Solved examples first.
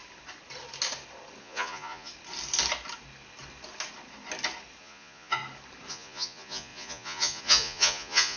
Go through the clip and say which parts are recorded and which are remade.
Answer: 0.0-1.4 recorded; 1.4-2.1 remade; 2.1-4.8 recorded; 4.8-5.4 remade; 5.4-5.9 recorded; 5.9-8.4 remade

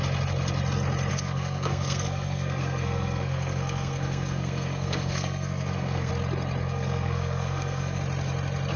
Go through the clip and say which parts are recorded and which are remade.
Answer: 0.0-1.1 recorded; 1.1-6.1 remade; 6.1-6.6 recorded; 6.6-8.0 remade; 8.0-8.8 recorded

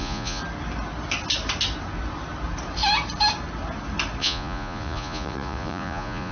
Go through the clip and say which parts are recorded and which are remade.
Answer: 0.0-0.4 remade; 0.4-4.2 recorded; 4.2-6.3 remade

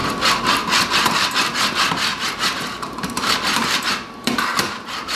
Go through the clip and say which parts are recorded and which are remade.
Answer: 0.0-2.1 recorded; 2.1-5.2 remade